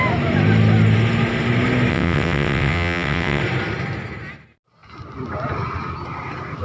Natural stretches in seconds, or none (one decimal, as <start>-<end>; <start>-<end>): 0.0-1.9; 3.4-6.6